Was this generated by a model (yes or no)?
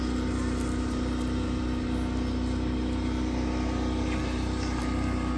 no